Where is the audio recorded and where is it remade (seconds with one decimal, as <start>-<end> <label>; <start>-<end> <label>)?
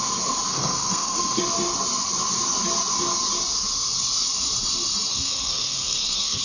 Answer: 0.0-0.5 recorded; 0.5-1.4 remade; 1.4-5.1 recorded; 5.1-6.4 remade